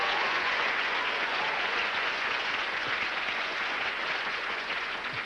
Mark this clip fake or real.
fake